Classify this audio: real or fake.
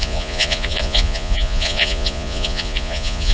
fake